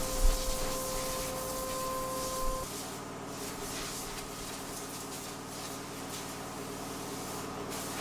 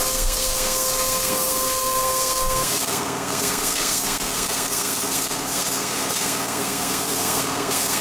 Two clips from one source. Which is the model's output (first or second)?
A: second